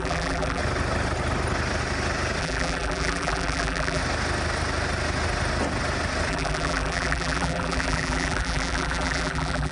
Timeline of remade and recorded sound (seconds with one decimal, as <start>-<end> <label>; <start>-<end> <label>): 0.0-0.6 remade; 0.6-2.4 recorded; 2.4-4.0 remade; 4.0-6.3 recorded; 6.3-9.7 remade